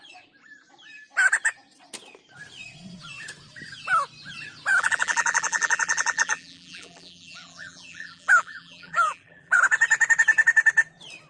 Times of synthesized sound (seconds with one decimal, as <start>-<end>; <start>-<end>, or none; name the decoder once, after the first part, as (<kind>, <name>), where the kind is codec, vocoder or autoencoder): 4.7-9.6 (vocoder, BigVGAN v2)